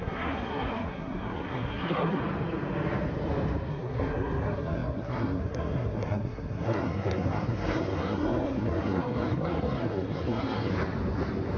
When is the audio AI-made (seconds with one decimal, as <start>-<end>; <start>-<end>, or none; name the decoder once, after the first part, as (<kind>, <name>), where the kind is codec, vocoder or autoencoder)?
0.0-2.2 (codec, SNAC); 3.7-10.7